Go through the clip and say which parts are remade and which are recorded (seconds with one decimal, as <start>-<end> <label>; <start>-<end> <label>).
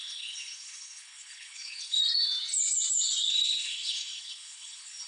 0.0-2.0 remade; 2.0-3.3 recorded; 3.3-5.1 remade